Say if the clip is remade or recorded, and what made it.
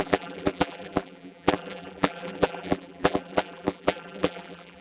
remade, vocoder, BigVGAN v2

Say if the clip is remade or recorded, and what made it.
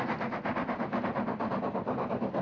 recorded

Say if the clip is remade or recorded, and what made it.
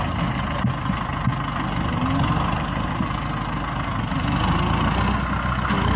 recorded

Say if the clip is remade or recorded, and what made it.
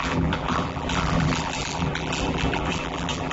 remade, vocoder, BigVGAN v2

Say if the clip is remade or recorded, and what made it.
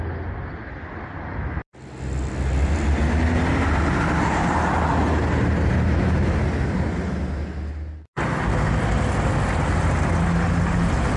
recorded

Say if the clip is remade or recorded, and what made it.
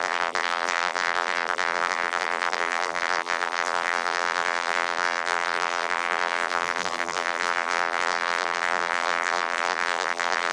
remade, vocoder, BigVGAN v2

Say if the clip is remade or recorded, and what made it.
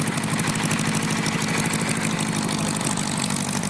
recorded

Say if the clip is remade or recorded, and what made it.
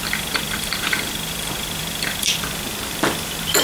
remade, vocoder, BigVGAN v2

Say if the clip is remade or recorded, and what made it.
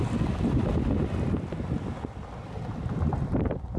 recorded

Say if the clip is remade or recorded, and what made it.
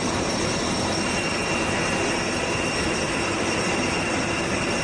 remade, vocoder, BigVGAN v2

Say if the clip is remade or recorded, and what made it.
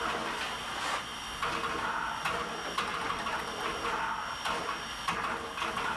recorded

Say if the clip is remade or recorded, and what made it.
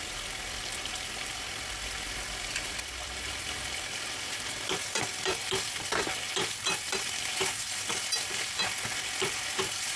remade, vocoder, BigVGAN v2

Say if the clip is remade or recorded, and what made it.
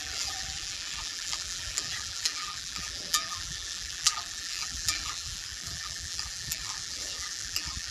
remade, vocoder, BigVGAN v2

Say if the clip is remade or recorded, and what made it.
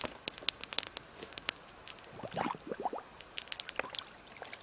recorded